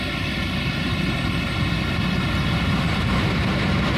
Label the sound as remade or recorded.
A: remade